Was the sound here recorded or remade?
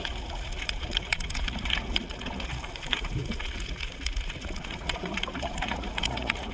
remade